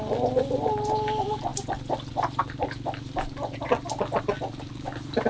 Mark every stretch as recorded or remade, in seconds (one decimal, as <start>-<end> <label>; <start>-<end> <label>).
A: 0.0-5.3 recorded